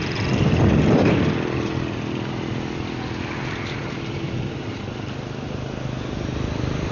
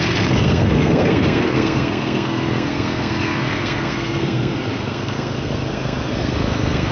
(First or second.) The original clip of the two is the first